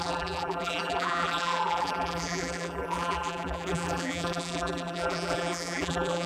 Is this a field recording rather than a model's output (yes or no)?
no